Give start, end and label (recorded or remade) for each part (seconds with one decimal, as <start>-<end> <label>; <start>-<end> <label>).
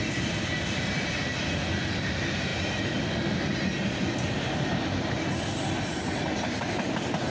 0.0-7.3 recorded